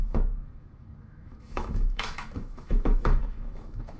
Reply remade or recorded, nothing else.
remade